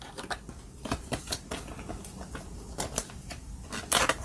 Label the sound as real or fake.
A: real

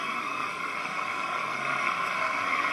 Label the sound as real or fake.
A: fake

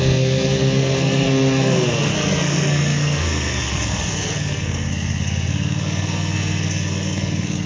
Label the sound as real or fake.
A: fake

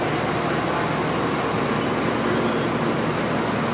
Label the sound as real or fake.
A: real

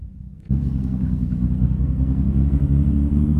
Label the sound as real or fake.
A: fake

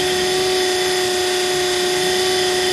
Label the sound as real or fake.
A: real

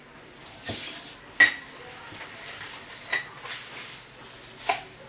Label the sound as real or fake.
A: real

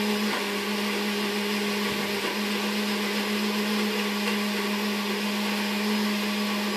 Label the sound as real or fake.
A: real